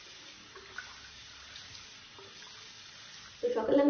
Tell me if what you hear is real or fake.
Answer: real